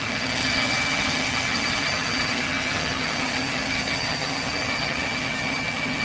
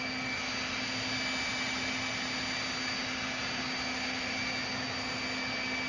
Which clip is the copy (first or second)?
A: first